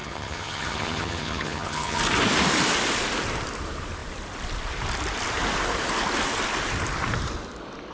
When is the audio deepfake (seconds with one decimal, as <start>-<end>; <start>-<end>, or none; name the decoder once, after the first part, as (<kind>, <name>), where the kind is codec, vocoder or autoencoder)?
0.0-2.0 (vocoder, HiFi-GAN)